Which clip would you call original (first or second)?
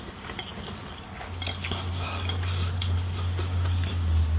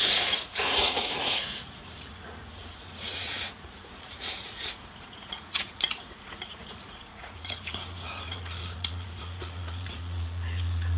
first